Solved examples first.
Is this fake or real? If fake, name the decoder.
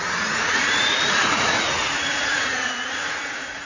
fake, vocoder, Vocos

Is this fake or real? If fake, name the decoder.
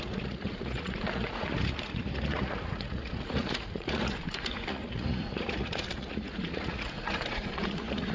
fake, vocoder, Vocos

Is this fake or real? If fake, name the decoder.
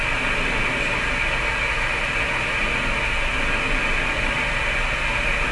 real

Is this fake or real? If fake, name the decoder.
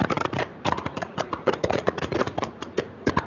fake, vocoder, Vocos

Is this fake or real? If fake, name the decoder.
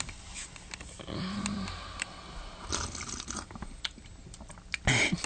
real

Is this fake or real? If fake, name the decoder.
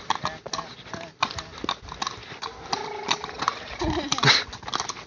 real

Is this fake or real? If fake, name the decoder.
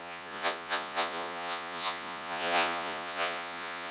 fake, vocoder, Vocos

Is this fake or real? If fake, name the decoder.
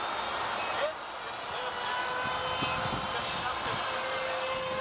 real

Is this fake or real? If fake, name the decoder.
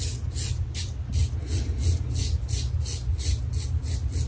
real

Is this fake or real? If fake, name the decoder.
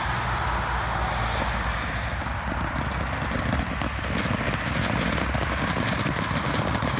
real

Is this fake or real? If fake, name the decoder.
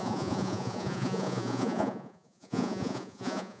fake, vocoder, Vocos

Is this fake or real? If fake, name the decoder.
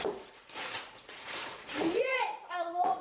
fake, vocoder, Vocos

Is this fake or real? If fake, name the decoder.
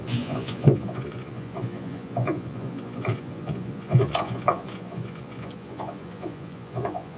fake, vocoder, Vocos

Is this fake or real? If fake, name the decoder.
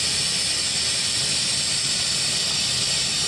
real